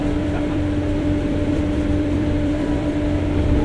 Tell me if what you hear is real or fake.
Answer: fake